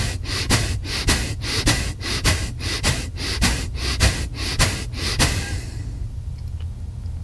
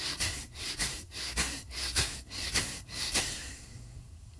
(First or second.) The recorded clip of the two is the first